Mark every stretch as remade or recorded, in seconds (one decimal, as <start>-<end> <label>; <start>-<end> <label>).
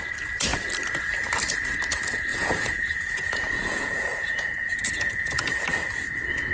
0.0-2.3 recorded; 2.3-5.4 remade; 5.4-6.5 recorded